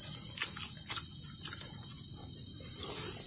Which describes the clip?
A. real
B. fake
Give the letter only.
A